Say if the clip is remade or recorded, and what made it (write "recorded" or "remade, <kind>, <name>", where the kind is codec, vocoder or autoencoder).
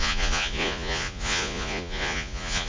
remade, vocoder, Vocos